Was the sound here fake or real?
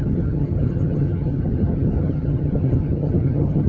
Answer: fake